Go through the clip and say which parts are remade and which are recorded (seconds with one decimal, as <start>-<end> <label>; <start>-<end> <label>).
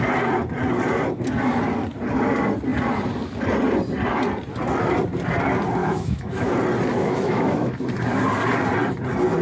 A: 0.0-5.8 recorded; 5.8-6.5 remade; 6.5-6.9 recorded; 6.9-7.8 remade; 7.8-9.4 recorded